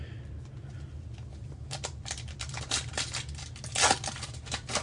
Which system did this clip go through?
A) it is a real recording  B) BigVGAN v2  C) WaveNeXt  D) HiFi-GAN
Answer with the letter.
A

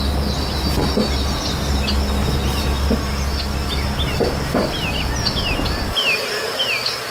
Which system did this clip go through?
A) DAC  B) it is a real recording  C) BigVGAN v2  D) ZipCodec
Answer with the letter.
B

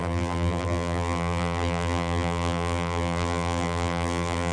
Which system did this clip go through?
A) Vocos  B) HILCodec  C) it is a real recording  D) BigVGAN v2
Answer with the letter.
D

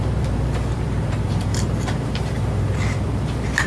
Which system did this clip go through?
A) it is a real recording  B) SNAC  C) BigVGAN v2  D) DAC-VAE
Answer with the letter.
C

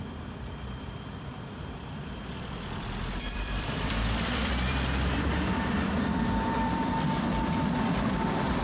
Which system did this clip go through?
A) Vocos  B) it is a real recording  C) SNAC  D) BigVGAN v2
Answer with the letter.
D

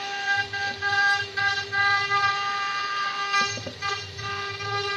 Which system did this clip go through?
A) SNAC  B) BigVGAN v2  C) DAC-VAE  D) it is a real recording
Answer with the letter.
B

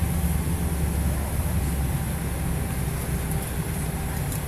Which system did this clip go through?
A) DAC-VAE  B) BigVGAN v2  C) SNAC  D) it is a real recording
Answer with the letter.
D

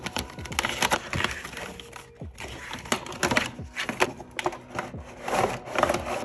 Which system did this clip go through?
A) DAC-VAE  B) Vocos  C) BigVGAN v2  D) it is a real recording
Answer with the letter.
D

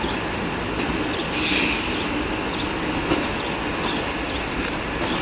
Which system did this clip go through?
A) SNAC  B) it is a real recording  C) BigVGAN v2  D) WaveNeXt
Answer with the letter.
B